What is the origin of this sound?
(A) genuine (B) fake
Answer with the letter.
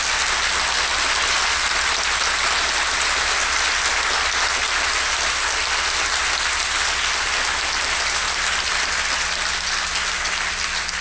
A